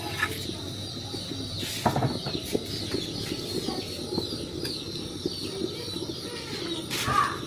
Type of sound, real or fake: real